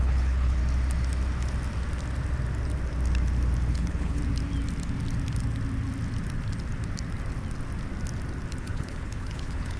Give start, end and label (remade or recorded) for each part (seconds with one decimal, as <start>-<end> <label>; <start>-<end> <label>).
0.0-0.6 remade; 0.6-3.7 recorded; 3.7-4.2 remade; 4.2-8.6 recorded; 8.6-9.8 remade